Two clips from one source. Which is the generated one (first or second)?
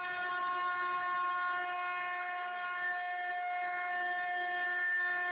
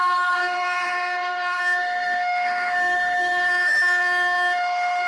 second